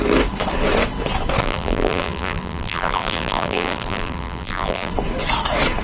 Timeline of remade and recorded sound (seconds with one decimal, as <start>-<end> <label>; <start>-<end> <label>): 0.0-1.4 recorded; 1.4-4.9 remade; 4.9-5.8 recorded

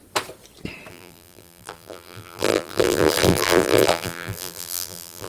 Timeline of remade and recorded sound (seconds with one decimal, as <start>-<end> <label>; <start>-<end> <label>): 0.0-0.9 recorded; 0.9-5.3 remade

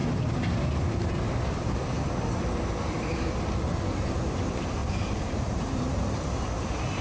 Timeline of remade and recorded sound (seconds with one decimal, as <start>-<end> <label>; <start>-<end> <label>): 0.0-4.8 recorded; 4.8-6.3 remade; 6.3-7.0 recorded

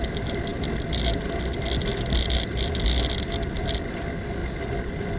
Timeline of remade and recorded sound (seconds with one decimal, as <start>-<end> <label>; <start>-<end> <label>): 0.0-4.4 recorded; 4.4-5.2 remade

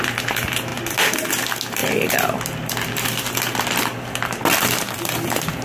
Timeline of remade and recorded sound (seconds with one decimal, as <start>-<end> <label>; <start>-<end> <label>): 0.0-1.8 recorded; 1.8-4.4 remade; 4.4-5.6 recorded

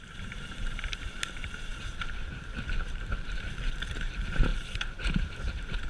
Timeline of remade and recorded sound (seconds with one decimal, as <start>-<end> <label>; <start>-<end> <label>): 0.0-5.9 remade